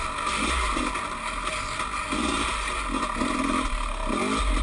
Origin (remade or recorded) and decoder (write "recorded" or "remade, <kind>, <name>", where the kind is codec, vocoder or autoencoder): recorded